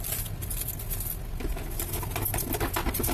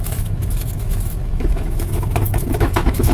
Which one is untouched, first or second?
first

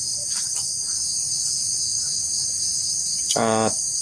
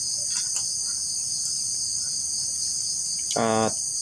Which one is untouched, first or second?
second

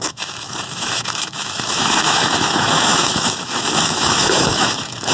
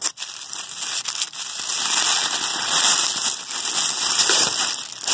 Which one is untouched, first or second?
second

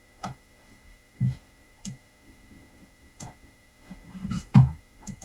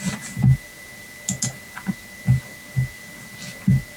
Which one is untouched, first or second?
second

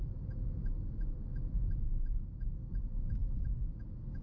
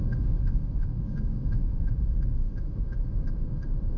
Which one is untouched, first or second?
first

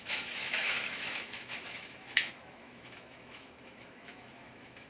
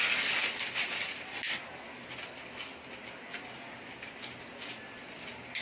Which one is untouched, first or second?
second